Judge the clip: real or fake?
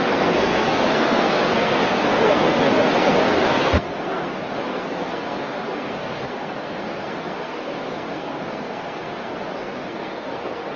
fake